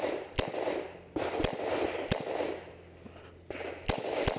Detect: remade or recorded recorded